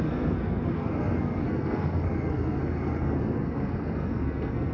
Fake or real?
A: fake